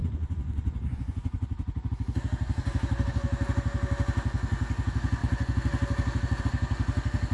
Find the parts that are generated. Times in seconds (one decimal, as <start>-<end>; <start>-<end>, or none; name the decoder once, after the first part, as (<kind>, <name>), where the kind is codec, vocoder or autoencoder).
0.0-1.9 (vocoder, Vocos)